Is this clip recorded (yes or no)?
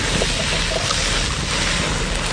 yes